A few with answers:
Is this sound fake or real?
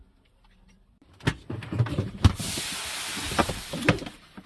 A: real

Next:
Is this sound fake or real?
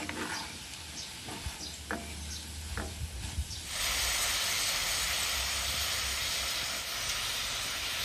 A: real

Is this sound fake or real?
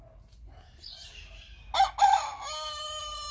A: real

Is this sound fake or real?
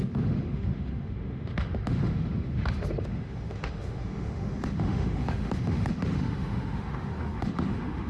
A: fake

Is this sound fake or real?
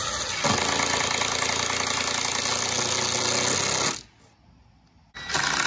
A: real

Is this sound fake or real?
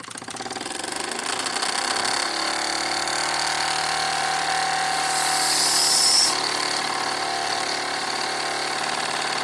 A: real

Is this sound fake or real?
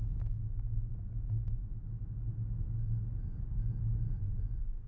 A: real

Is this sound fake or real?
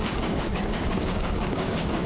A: fake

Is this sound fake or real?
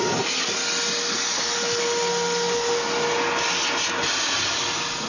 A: real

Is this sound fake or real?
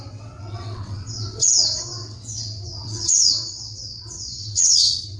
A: fake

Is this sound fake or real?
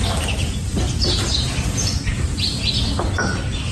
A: real